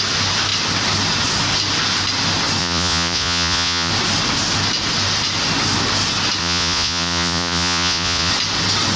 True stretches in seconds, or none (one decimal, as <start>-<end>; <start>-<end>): 0.0-2.6; 3.9-6.4; 8.3-9.0